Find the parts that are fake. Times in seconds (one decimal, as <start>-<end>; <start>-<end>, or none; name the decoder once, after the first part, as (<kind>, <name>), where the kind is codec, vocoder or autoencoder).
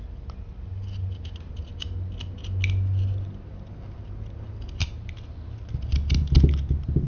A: none